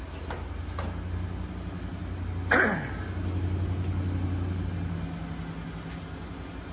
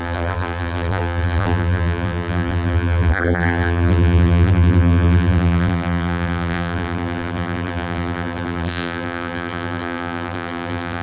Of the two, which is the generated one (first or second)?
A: second